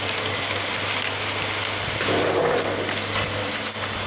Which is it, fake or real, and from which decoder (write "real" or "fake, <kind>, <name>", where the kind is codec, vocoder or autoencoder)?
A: real